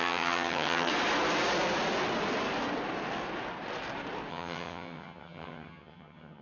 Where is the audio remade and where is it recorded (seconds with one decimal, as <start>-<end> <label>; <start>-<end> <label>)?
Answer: 0.0-0.9 remade; 0.9-4.3 recorded; 4.3-6.4 remade